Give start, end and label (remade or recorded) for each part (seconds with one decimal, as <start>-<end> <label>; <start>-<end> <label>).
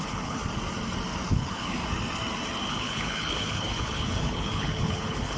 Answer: 0.0-0.4 remade; 0.4-1.3 recorded; 1.3-1.8 remade; 1.8-2.7 recorded; 2.7-5.4 remade